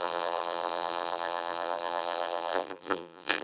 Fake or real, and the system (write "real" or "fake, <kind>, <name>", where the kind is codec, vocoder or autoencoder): fake, vocoder, BigVGAN v2